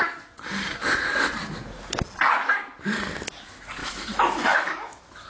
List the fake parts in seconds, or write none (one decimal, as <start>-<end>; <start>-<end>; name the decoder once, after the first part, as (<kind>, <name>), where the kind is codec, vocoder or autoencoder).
3.8-5.3 (autoencoder, DAC-VAE)